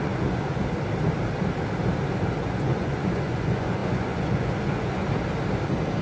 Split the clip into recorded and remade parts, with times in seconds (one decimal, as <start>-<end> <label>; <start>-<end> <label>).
0.0-0.6 remade; 0.6-2.4 recorded; 2.4-5.0 remade; 5.0-6.0 recorded